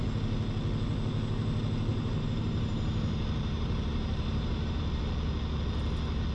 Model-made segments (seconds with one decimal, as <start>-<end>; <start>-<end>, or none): 1.9-5.0